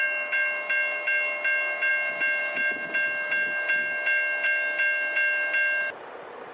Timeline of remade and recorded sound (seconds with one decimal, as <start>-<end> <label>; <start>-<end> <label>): 0.0-6.5 recorded